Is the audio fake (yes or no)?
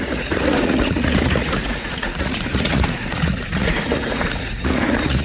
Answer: yes